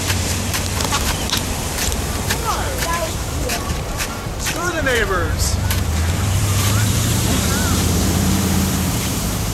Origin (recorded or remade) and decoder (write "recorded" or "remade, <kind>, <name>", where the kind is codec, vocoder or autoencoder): remade, vocoder, BigVGAN v2